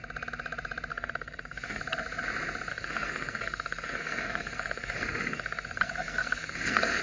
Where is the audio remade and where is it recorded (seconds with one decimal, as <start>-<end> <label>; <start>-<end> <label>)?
0.0-0.9 recorded; 0.9-1.8 remade; 1.8-2.7 recorded; 2.7-7.0 remade